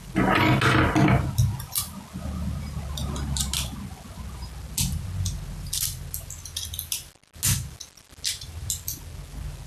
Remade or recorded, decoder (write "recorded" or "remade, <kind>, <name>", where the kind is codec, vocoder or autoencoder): recorded